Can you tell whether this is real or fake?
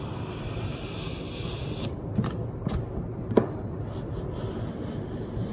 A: fake